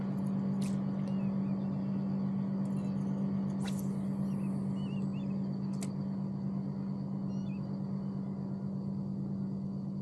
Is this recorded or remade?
recorded